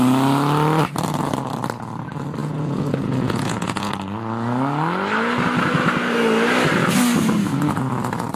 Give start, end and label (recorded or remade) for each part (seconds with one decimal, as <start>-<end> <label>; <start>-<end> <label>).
0.0-2.4 recorded; 2.4-3.9 remade; 3.9-8.4 recorded

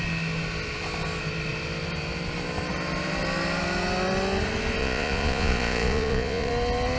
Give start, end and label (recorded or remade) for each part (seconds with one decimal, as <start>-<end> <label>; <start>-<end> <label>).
0.0-4.8 recorded; 4.8-6.5 remade; 6.5-7.0 recorded

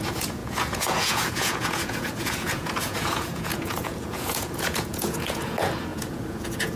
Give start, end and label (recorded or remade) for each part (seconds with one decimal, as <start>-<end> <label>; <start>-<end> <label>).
0.0-6.8 remade

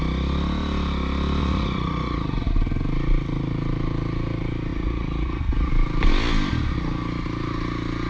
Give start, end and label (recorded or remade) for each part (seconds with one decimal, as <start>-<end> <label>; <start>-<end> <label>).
0.0-1.4 recorded; 1.4-2.5 remade; 2.5-4.7 recorded; 4.7-5.7 remade; 5.7-8.1 recorded